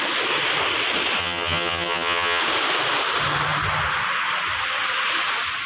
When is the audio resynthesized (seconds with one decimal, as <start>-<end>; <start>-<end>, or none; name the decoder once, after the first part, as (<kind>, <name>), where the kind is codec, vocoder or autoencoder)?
1.2-2.4 (vocoder, HiFi-GAN)